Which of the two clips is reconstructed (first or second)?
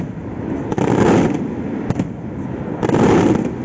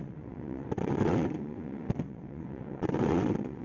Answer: second